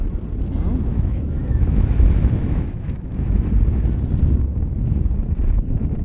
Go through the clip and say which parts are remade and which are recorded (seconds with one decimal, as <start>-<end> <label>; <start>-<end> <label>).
0.0-0.9 recorded; 0.9-3.5 remade; 3.5-6.0 recorded